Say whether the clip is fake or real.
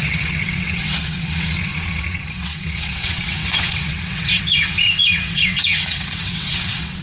fake